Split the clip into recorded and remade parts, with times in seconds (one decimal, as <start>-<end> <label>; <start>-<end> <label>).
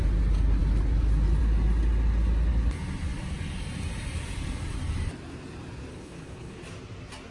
0.0-5.9 recorded; 5.9-6.6 remade; 6.6-7.3 recorded